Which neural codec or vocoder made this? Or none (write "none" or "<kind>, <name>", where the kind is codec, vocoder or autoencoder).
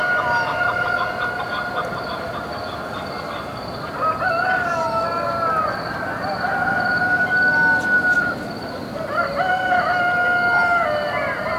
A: none